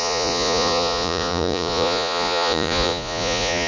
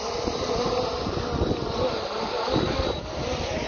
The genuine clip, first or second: second